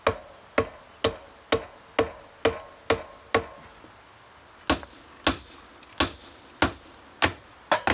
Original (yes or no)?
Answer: yes